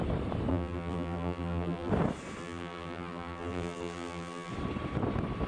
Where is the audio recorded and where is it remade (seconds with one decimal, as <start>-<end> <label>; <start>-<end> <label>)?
0.0-0.5 recorded; 0.5-1.9 remade; 1.9-2.4 recorded; 2.4-4.5 remade; 4.5-5.5 recorded